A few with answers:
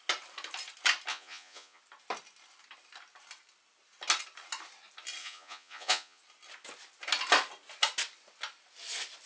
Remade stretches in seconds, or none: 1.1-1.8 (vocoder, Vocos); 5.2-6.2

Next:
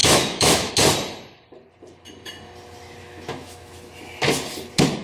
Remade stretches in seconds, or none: 0.0-0.7 (autoencoder, DAC-VAE); 3.0-3.7

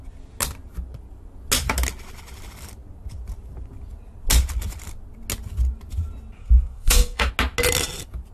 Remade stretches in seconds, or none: 6.4-7.3 (codec, SNAC)